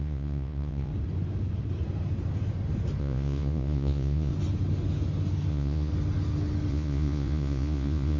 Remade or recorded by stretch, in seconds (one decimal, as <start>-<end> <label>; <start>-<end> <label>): 0.0-0.9 remade; 0.9-3.0 recorded; 3.0-4.3 remade; 4.3-5.5 recorded; 5.5-5.9 remade; 5.9-6.7 recorded; 6.7-8.2 remade